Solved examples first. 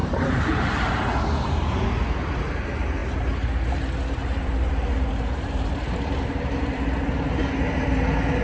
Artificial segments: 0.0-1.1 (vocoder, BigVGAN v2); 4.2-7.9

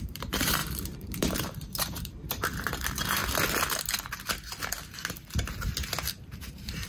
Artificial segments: 0.0-3.2 (vocoder, BigVGAN v2); 6.1-6.9